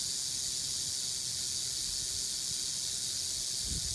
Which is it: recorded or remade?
recorded